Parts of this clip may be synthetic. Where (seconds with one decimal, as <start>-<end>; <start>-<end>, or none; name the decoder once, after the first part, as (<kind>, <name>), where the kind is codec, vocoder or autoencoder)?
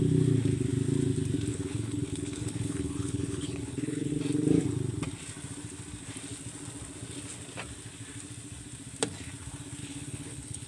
1.5-4.1 (codec, HILCodec); 9.8-10.7